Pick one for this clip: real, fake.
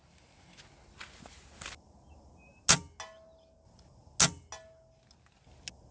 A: real